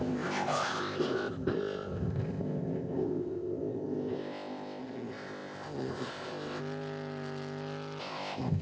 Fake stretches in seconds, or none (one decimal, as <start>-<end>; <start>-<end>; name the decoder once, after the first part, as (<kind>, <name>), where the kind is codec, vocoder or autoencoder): 0.0-6.6 (codec, ZipCodec); 8.0-8.6